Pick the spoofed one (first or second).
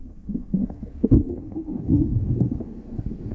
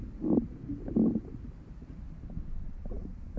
first